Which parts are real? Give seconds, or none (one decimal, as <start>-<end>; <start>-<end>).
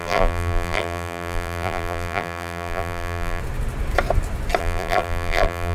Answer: 3.4-4.6